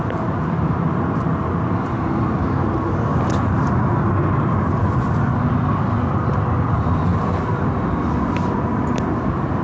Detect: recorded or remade remade